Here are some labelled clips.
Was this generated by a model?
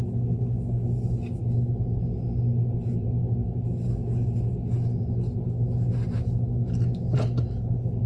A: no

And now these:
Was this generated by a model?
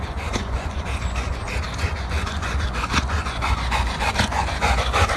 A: yes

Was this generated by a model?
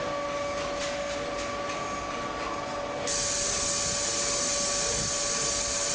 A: no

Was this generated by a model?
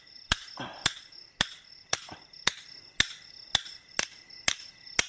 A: no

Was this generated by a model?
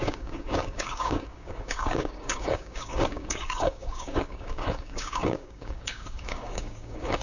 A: yes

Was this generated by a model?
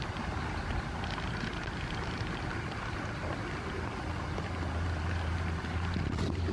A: no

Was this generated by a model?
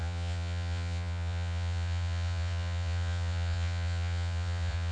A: yes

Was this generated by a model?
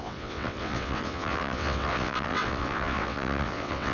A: yes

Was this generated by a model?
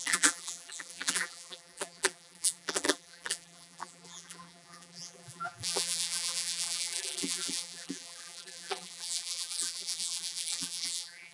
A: yes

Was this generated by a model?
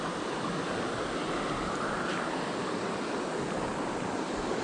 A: no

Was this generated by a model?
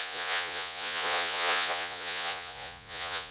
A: yes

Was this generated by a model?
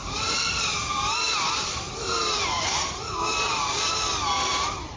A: yes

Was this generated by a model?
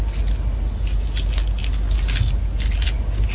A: no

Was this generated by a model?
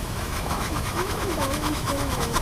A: yes